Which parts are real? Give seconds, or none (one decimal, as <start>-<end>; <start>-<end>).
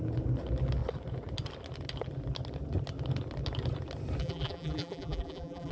0.0-4.2